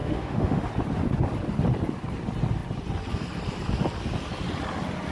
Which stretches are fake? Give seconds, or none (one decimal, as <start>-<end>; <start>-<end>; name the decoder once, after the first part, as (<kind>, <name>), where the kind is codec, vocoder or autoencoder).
0.0-0.7 (autoencoder, DAC-VAE)